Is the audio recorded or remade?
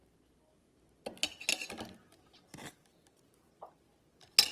recorded